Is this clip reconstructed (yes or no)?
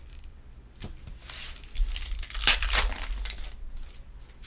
no